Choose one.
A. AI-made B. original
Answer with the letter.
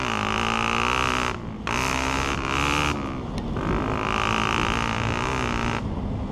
B